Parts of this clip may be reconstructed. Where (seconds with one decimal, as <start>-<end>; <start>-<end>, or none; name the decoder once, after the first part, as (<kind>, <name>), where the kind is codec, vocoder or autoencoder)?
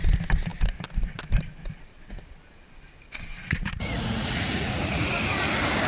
3.3-5.2 (vocoder, Vocos)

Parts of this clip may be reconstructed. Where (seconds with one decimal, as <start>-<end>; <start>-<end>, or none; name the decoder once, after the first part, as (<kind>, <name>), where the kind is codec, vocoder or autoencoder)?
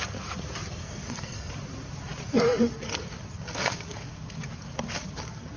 0.8-1.5 (codec, SNAC)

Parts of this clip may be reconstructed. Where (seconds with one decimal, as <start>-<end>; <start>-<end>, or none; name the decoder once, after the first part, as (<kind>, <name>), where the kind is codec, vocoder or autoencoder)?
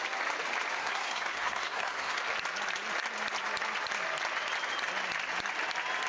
0.8-2.2 (codec, SNAC)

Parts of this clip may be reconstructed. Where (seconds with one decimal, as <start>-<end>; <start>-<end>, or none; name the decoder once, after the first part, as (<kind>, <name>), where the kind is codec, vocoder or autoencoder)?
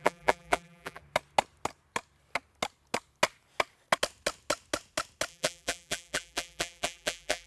0.0-1.0 (vocoder, BigVGAN v2); 5.3-7.5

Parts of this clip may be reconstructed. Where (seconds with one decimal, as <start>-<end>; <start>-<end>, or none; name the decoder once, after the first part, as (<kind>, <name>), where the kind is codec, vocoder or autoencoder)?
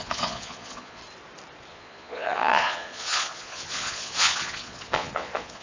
0.0-1.0 (vocoder, Vocos); 1.7-5.6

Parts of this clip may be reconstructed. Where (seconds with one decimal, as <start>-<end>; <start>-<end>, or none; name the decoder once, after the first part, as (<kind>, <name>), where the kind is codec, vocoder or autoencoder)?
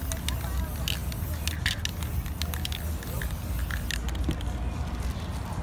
none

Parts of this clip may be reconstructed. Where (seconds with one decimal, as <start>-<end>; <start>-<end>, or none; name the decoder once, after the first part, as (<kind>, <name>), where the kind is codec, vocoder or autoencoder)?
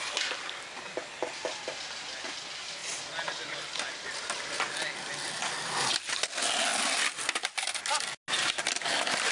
none